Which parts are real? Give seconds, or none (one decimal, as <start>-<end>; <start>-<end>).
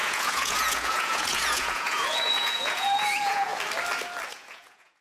3.5-4.3